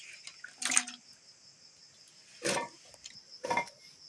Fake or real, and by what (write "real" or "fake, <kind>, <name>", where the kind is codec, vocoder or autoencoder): real